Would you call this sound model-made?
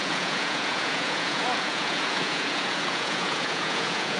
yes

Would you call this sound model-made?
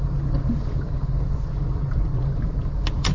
no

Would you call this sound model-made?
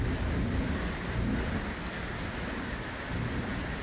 no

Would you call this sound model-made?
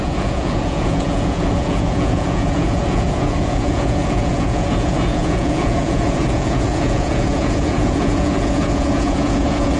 yes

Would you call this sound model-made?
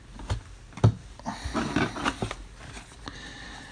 no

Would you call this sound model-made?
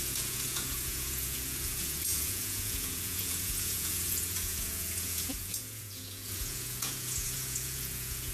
yes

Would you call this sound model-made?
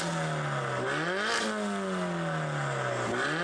no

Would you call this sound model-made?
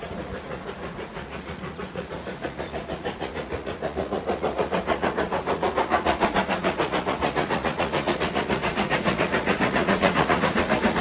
yes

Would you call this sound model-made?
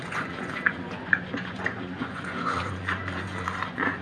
yes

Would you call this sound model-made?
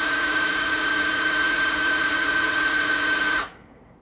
yes